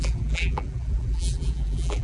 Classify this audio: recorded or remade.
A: remade